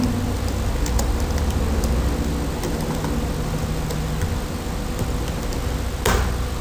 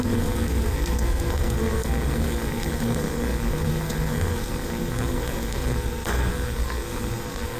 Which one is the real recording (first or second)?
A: first